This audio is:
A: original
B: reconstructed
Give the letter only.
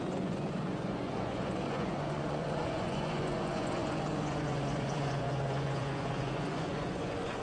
B